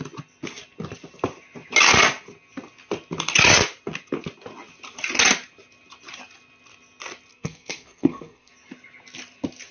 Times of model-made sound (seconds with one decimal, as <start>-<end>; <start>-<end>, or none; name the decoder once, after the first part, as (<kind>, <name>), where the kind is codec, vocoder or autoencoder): 7.3-8.5 (codec, SNAC)